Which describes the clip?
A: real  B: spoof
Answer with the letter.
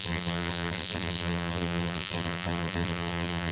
B